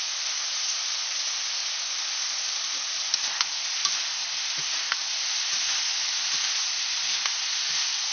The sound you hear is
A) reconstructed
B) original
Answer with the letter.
B